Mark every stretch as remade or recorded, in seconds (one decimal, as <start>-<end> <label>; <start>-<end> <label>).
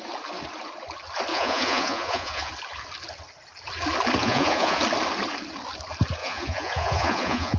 0.0-1.3 recorded; 1.3-2.5 remade; 2.5-4.2 recorded; 4.2-4.8 remade; 4.8-6.2 recorded; 6.2-7.6 remade